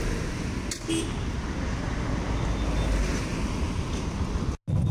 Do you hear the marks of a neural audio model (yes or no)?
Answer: no